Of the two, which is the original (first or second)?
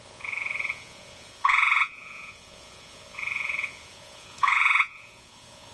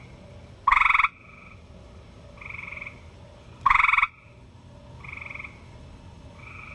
second